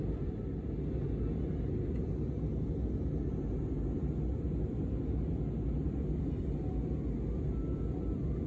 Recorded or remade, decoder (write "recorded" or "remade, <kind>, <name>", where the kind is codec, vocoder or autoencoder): recorded